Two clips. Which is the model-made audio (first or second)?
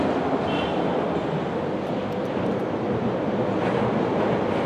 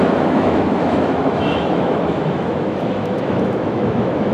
second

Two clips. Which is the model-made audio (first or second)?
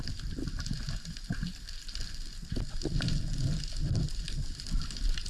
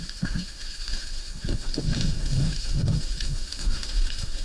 second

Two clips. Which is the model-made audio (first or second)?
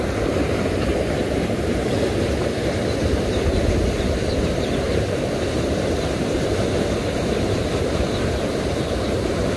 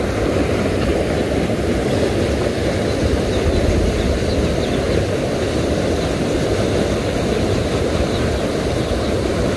first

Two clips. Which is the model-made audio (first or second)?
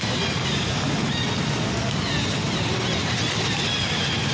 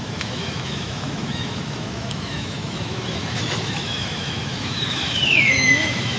second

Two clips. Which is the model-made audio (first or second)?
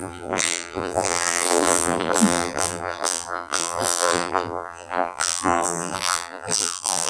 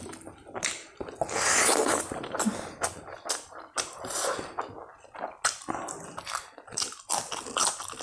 first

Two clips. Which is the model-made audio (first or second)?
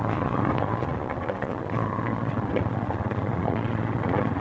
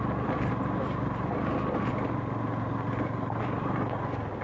first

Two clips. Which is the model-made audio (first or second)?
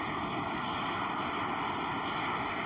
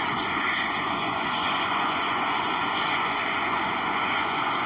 second